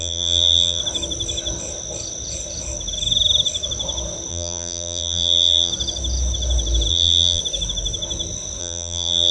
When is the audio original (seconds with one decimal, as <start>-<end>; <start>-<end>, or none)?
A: 0.8-4.3; 5.7-6.9; 7.4-8.6

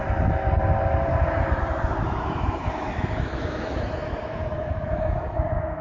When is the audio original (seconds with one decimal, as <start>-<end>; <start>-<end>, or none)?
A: 0.0-2.0

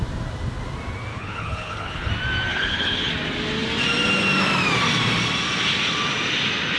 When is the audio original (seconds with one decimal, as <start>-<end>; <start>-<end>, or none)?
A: 0.0-1.1; 2.1-2.5; 3.1-6.8

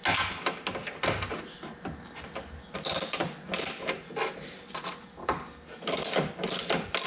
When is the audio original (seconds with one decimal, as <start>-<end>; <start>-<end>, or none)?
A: 0.0-5.1; 6.6-7.1